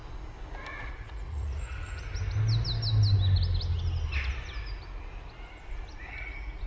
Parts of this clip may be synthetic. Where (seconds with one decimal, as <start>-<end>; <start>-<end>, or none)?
0.9-2.1; 6.1-6.7

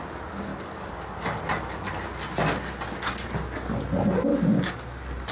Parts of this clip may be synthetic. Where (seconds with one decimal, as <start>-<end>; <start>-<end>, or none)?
0.5-1.4

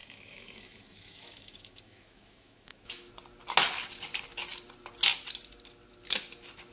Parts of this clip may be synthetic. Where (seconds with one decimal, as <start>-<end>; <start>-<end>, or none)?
0.0-3.1

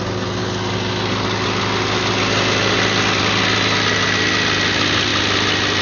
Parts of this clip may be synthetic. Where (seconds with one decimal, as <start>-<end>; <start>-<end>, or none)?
none

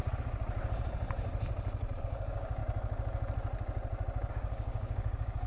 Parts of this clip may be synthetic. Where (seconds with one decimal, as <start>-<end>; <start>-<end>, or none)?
2.0-2.6; 4.3-5.5

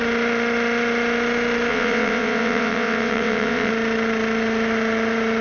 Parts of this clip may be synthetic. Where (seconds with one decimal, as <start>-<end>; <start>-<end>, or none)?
1.7-3.7